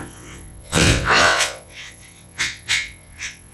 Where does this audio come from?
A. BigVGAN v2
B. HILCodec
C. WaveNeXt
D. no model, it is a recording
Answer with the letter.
C